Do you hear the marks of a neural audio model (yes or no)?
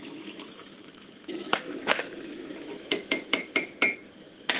yes